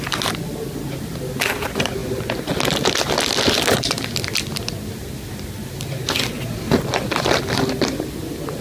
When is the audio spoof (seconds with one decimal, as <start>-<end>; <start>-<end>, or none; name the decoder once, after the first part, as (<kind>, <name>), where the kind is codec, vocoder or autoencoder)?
none